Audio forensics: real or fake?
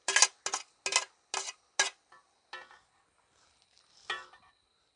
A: real